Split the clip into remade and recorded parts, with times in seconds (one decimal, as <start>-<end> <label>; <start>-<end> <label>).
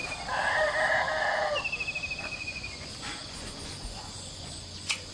0.0-2.2 recorded; 2.2-5.1 remade